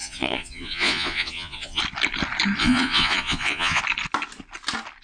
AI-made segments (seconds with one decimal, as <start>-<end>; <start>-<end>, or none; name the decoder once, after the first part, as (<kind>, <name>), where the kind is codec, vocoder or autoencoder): 0.0-1.8 (vocoder, Vocos); 2.6-3.8